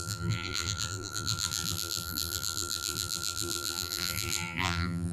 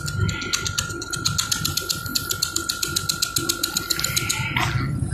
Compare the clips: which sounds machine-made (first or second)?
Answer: first